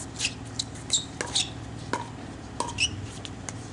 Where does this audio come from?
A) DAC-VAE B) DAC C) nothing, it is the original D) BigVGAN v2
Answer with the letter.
C